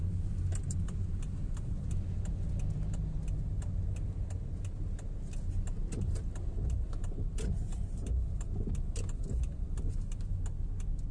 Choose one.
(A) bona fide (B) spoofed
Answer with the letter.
A